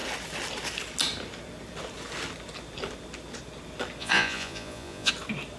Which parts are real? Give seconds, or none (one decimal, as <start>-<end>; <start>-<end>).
0.0-4.0; 5.1-5.6